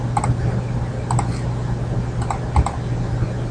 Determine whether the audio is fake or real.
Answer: real